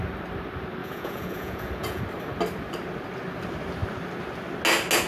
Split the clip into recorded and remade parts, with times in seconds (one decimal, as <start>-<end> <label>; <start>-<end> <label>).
0.0-0.8 recorded; 0.8-2.0 remade; 2.0-5.1 recorded